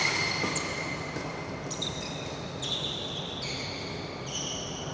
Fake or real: real